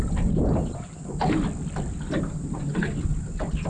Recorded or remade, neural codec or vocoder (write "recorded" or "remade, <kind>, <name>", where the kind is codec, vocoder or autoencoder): remade, vocoder, BigVGAN v2